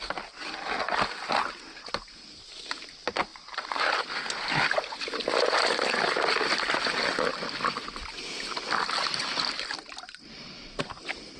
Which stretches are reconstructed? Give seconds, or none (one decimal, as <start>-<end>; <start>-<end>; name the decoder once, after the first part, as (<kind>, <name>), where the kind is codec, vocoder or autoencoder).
3.3-4.0 (vocoder, BigVGAN v2)